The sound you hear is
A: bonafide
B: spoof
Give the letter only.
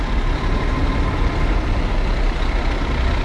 A